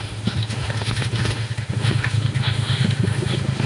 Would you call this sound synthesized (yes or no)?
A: yes